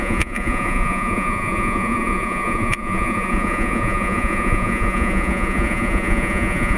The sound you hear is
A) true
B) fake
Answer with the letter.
B